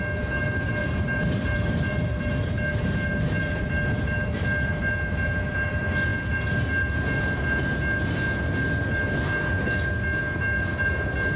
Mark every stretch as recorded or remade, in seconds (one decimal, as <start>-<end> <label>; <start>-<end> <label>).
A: 0.0-0.8 recorded; 0.8-4.9 remade; 4.9-11.4 recorded